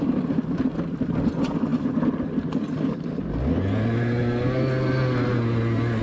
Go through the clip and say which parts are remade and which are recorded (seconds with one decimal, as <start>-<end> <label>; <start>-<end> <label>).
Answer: 0.0-6.0 recorded

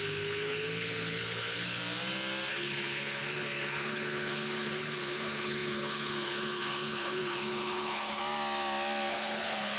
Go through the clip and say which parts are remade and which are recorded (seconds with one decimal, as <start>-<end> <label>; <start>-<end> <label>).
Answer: 0.0-1.8 remade; 1.8-2.5 recorded; 2.5-8.2 remade; 8.2-9.1 recorded; 9.1-9.8 remade

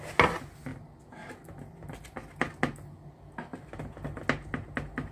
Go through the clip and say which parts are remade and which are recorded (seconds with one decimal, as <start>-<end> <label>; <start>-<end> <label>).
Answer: 0.0-5.1 recorded

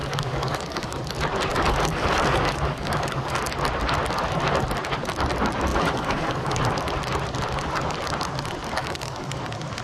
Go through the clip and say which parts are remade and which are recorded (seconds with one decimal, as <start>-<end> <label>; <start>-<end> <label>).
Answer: 0.0-1.0 remade; 1.0-1.5 recorded; 1.5-3.4 remade; 3.4-5.7 recorded; 5.7-6.6 remade; 6.6-8.8 recorded; 8.8-9.4 remade; 9.4-9.8 recorded

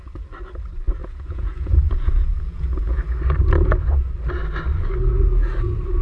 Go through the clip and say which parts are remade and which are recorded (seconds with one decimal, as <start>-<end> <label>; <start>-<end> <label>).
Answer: 0.0-1.0 recorded; 1.0-3.0 remade; 3.0-6.0 recorded

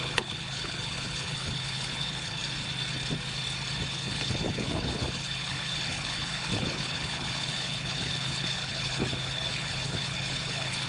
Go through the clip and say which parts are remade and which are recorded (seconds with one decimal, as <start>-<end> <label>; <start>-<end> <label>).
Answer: 0.0-2.4 remade; 2.4-3.9 recorded; 3.9-10.9 remade